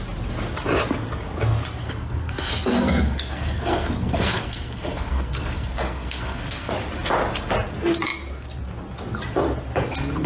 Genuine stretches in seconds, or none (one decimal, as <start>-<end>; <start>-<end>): 0.0-1.8; 6.7-10.3